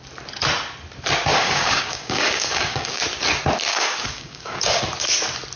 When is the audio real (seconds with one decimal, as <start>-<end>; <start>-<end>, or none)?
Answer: 0.0-1.3; 3.0-3.7; 4.8-5.6